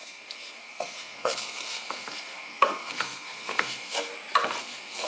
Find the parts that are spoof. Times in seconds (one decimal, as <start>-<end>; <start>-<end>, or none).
0.0-4.1; 4.6-5.1